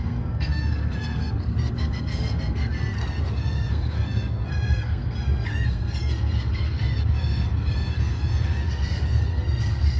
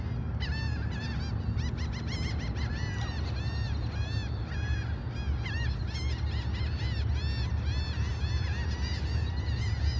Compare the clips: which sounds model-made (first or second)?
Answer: first